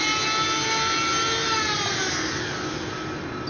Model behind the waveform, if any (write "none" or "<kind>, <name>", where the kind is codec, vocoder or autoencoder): none